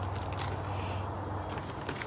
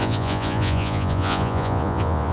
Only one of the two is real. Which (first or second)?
first